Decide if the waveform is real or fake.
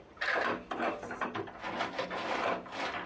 real